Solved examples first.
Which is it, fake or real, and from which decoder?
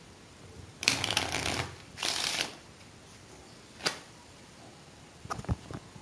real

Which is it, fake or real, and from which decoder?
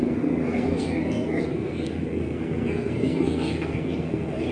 fake, codec, SNAC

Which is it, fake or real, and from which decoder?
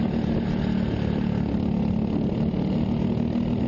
real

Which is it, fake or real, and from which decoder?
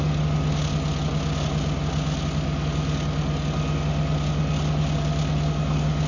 real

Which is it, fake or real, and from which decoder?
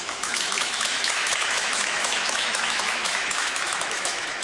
fake, autoencoder, DAC-VAE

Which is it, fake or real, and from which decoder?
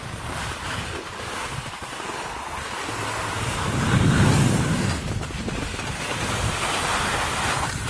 real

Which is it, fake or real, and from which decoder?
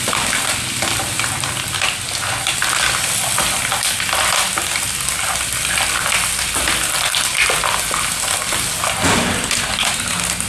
real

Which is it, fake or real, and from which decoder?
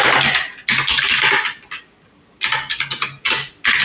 real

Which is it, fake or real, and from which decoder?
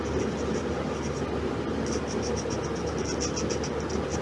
real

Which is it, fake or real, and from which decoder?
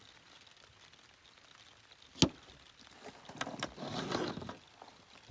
real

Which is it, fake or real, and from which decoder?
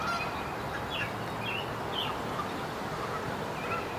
real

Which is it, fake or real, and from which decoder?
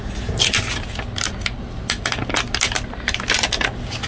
real